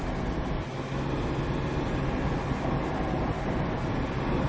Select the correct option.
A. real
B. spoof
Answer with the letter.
A